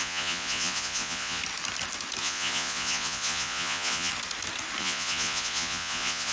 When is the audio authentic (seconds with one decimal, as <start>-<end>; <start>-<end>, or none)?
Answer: 1.4-2.2; 4.1-4.8